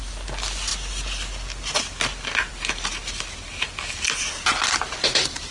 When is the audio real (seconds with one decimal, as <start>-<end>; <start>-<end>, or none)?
0.0-5.5